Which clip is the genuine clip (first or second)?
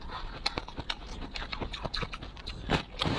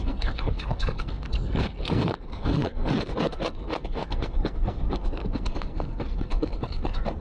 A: first